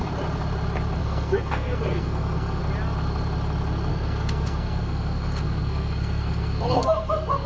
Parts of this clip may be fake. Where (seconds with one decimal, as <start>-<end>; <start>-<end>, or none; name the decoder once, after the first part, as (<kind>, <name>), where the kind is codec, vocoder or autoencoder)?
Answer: 1.0-2.6 (codec, SNAC); 3.9-7.5